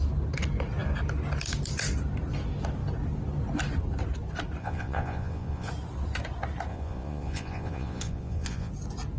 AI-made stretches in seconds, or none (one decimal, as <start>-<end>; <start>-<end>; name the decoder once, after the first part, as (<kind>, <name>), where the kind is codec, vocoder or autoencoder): 4.6-5.7 (vocoder, Vocos); 6.7-8.7